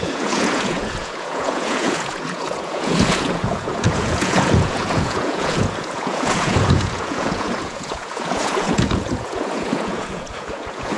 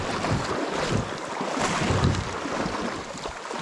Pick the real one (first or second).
second